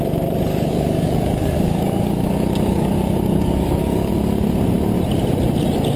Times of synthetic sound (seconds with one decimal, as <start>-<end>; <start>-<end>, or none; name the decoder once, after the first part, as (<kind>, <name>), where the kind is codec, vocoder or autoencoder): 0.5-4.1 (codec, DAC)